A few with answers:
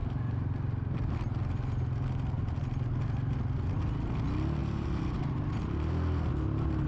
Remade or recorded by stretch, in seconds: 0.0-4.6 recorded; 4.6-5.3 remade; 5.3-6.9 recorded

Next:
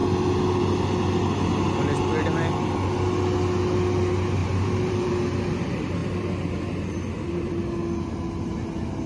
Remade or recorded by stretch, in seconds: 0.0-4.4 recorded; 4.4-5.1 remade; 5.1-6.0 recorded; 6.0-7.6 remade; 7.6-9.1 recorded